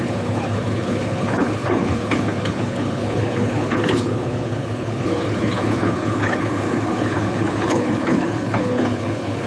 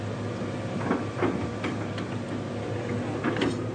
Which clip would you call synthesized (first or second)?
first